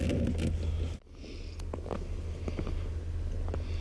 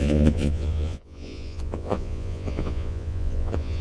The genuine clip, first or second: first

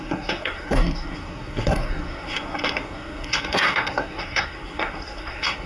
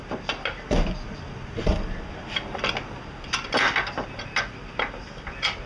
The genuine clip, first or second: second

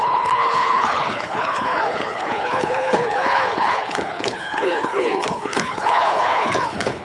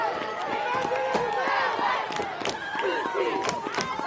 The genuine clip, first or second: second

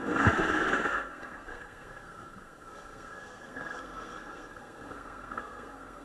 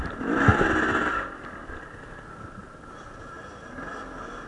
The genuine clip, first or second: second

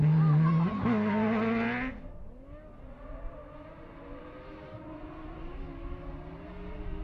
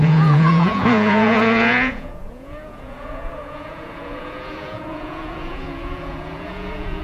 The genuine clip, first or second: first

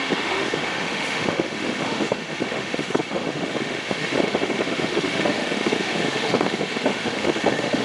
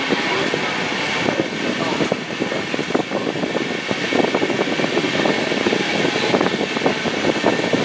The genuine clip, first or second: second